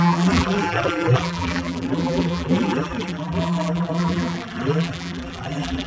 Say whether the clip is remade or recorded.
remade